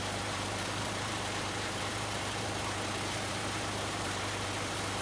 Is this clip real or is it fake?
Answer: fake